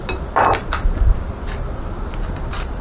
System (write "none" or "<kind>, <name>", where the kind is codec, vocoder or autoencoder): none